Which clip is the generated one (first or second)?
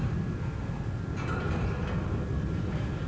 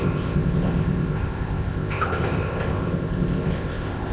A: second